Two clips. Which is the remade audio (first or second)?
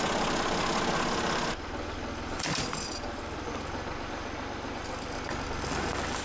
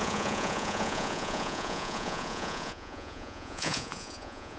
second